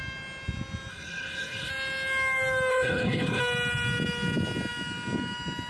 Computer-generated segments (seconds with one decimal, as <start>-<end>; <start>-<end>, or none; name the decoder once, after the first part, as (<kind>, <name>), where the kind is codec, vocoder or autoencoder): 0.9-1.7 (codec, HILCodec); 2.7-3.4